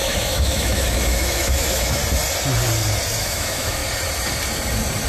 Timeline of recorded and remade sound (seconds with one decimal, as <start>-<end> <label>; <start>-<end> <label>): 0.0-2.0 remade; 2.0-3.2 recorded; 3.2-3.8 remade; 3.8-5.1 recorded